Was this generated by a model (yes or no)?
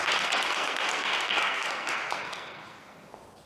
yes